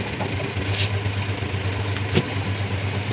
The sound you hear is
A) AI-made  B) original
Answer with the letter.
B